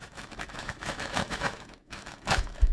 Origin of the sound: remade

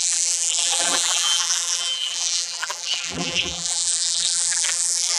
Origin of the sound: remade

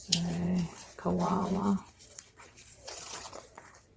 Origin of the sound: remade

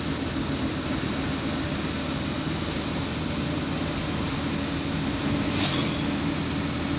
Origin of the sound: recorded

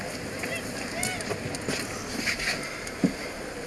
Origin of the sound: recorded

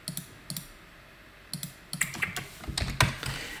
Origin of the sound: recorded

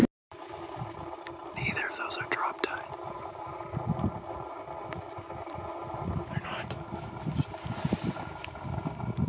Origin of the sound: recorded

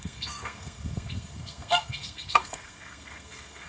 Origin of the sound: remade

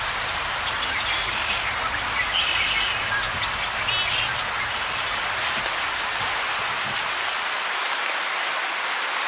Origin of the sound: recorded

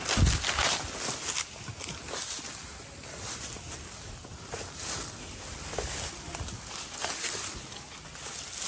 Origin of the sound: recorded